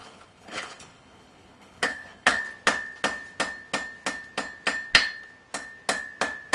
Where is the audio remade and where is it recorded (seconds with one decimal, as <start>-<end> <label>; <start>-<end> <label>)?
0.0-2.4 remade; 2.4-6.5 recorded